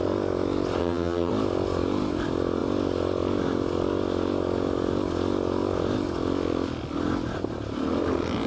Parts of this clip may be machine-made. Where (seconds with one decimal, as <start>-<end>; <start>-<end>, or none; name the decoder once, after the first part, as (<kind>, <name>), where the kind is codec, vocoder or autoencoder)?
0.8-1.3 (vocoder, HiFi-GAN)